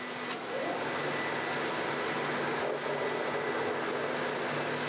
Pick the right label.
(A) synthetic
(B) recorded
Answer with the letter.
B